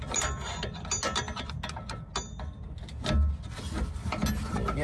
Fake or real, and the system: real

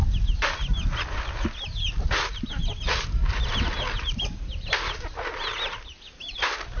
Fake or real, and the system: real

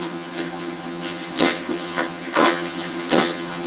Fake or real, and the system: fake, vocoder, HiFi-GAN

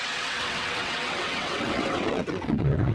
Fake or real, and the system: fake, vocoder, WaveNeXt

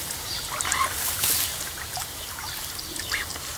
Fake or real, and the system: real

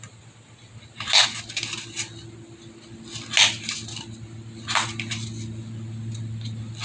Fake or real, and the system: real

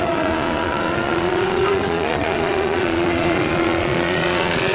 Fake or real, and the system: fake, vocoder, Vocos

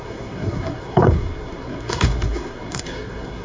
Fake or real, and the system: fake, codec, SNAC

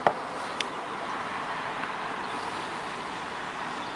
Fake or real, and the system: real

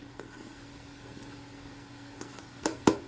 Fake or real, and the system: fake, codec, SNAC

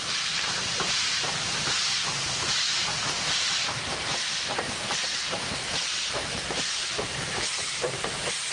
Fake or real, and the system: fake, vocoder, BigVGAN v2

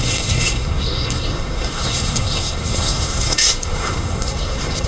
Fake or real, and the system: fake, codec, SNAC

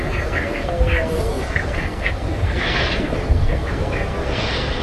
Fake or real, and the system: fake, codec, SNAC